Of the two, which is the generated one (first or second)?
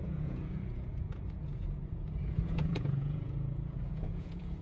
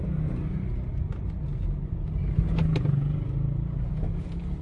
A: first